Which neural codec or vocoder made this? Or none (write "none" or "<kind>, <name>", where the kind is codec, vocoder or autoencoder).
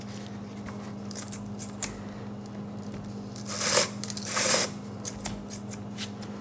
none